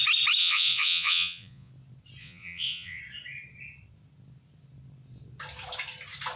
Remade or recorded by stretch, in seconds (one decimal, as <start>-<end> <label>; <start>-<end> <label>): 0.0-0.4 recorded; 0.4-1.7 remade; 1.7-2.2 recorded; 2.2-3.0 remade; 3.0-6.4 recorded